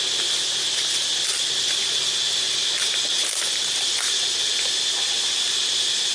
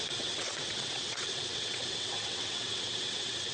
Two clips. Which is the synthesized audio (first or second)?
second